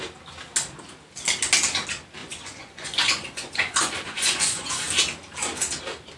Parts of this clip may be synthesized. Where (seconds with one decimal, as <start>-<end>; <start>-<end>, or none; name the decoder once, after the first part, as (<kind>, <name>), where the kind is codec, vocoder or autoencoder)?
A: 2.2-4.8 (vocoder, Vocos)